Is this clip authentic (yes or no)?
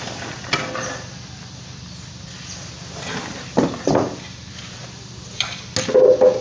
yes